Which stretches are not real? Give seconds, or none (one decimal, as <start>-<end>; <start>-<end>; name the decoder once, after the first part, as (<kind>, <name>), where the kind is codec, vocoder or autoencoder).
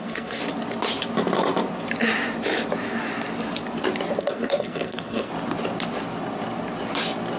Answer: 0.0-0.4 (codec, SNAC); 4.2-5.3